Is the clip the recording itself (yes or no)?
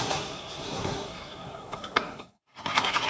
no